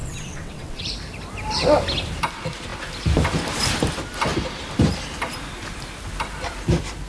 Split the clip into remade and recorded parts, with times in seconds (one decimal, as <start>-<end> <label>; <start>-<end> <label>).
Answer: 0.0-0.8 remade; 0.8-7.1 recorded